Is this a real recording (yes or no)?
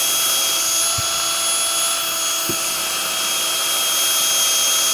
yes